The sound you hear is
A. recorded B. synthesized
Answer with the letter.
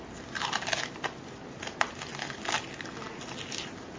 A